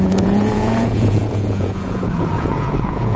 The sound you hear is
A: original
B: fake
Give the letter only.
B